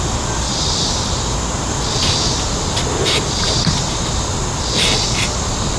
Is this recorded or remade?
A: recorded